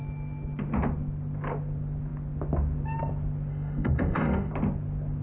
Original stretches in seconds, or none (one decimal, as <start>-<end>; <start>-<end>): 0.0-3.5; 4.5-5.2